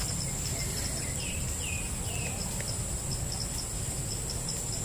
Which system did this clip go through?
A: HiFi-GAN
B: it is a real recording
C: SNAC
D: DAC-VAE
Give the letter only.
B